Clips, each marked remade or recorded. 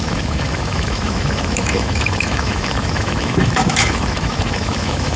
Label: remade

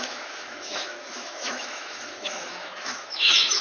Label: remade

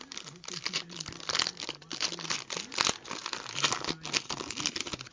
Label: recorded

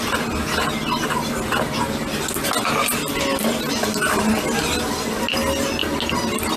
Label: recorded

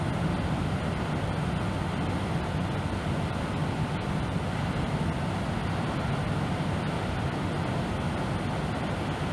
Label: recorded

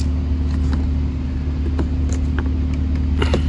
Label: recorded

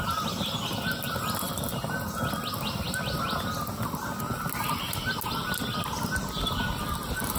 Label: recorded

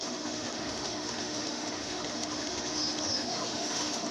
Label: remade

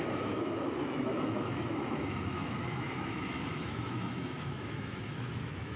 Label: remade